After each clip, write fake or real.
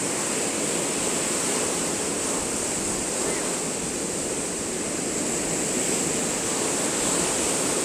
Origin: real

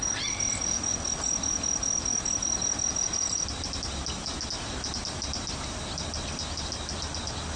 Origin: real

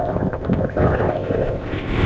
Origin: fake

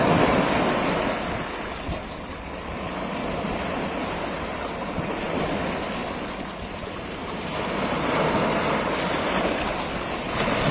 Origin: real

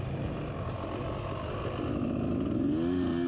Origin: real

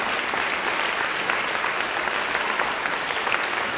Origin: real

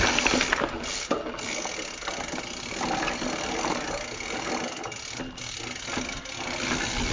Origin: real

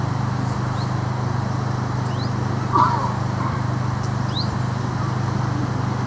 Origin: real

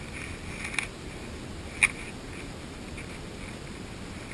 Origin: real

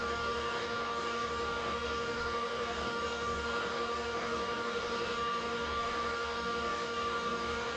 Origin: fake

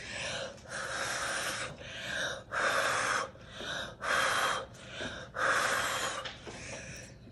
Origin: real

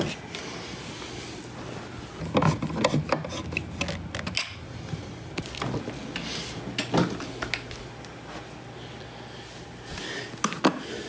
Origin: real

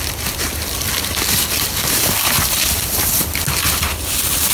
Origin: real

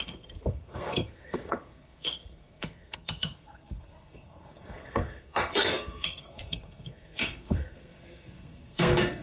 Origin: fake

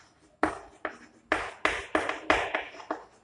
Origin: real